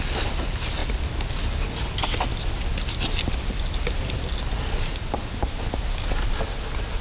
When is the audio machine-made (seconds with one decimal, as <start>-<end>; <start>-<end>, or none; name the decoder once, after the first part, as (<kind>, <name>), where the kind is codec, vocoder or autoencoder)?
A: none